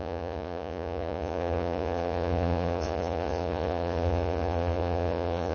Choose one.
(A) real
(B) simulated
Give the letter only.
B